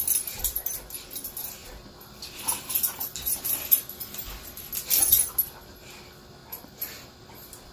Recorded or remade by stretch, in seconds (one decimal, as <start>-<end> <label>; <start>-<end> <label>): 0.0-6.4 recorded; 6.4-7.3 remade; 7.3-7.7 recorded